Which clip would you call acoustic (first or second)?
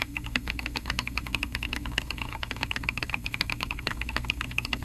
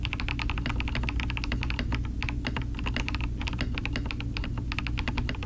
second